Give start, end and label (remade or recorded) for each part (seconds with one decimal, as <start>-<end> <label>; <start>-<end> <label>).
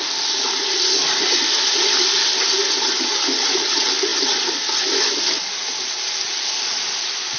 0.0-7.4 recorded